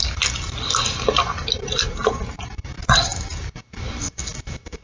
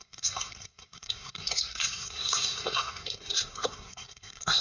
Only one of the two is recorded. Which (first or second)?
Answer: first